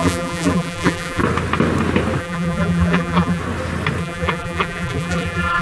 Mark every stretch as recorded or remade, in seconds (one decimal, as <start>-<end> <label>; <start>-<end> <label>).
0.0-1.2 remade; 1.2-2.2 recorded; 2.2-3.4 remade; 3.4-4.0 recorded; 4.0-5.6 remade